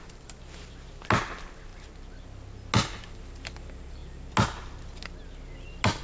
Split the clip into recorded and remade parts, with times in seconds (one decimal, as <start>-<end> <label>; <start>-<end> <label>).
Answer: 0.0-6.0 recorded